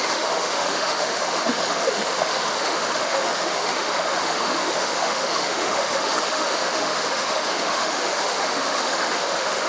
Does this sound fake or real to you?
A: fake